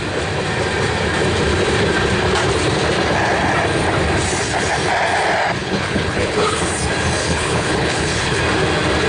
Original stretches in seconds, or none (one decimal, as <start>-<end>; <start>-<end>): 0.0-5.6; 6.7-7.2; 8.4-9.1